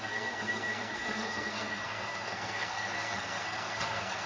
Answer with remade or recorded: remade